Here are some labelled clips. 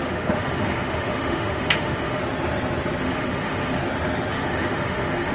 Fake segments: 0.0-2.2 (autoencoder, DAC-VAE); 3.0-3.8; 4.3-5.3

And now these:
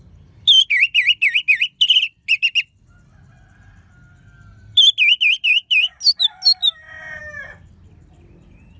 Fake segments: none

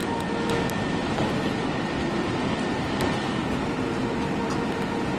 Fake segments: 3.4-4.5 (vocoder, BigVGAN v2)

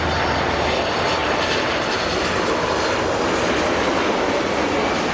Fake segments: 1.2-1.7 (vocoder, BigVGAN v2)

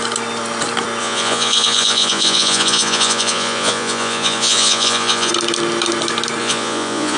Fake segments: 1.0-5.3 (vocoder, Vocos); 6.4-7.2

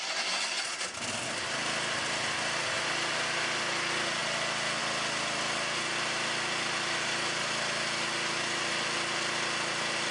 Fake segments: none

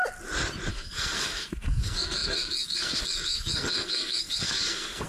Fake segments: 0.7-5.1 (codec, SNAC)

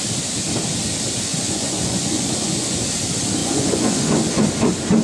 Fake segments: 1.3-2.8 (vocoder, Vocos); 3.4-4.5